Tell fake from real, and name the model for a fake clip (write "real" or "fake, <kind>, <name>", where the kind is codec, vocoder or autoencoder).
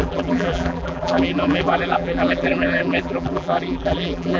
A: fake, vocoder, BigVGAN v2